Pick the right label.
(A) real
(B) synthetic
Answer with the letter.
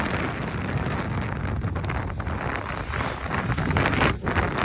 A